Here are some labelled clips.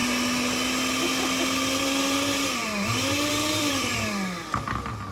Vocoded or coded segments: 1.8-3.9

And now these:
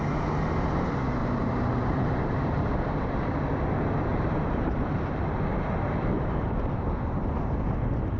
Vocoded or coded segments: 1.2-3.4; 4.1-6.4

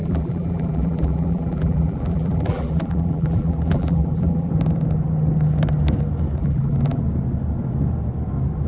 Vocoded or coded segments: 0.0-4.5; 6.4-7.0

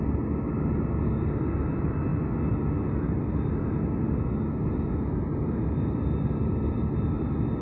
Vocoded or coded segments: none